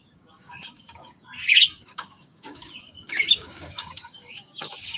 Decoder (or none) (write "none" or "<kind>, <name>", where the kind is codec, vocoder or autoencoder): codec, DAC